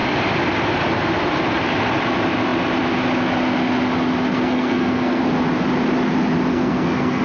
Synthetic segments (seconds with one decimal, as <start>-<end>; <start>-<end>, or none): 4.3-5.2; 6.5-7.2